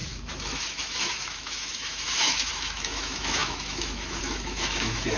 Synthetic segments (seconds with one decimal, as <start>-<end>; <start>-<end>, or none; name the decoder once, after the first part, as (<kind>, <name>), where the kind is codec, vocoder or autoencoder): 0.0-5.2 (autoencoder, DAC-VAE)